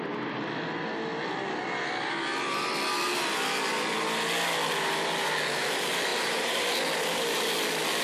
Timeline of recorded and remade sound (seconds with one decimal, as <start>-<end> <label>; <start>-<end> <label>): 0.0-6.1 recorded; 6.1-6.7 remade; 6.7-8.0 recorded